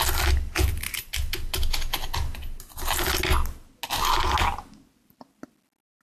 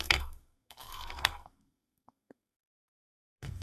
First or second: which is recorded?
first